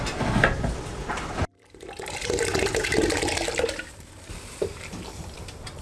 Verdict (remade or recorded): remade